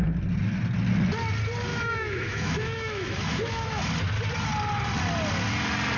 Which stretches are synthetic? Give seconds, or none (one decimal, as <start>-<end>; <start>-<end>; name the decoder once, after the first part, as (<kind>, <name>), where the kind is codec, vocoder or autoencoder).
1.7-3.8 (autoencoder, DAC-VAE)